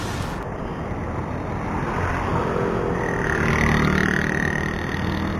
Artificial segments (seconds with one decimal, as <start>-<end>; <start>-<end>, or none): none